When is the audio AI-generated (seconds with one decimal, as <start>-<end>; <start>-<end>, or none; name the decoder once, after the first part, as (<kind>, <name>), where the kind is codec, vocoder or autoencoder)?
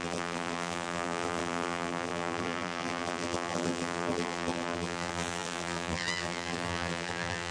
0.0-7.5 (vocoder, BigVGAN v2)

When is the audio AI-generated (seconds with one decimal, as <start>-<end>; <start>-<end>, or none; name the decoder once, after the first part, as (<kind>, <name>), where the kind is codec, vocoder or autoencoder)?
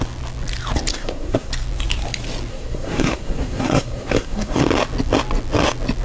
0.9-1.5 (codec, SNAC); 2.5-4.6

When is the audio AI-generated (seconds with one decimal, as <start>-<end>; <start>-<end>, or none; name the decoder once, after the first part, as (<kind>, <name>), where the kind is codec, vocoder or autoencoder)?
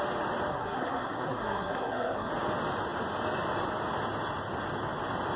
0.5-2.3 (codec, SNAC)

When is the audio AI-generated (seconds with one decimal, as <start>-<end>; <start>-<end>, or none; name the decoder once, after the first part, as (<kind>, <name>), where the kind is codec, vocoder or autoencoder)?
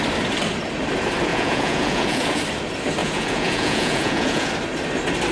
1.3-2.4 (vocoder, Vocos); 3.0-4.5